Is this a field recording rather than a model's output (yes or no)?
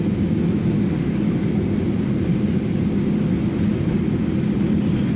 yes